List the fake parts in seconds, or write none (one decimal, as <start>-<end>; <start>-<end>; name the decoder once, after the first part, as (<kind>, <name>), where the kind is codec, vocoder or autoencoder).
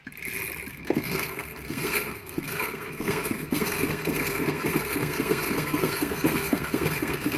0.7-7.4 (codec, SNAC)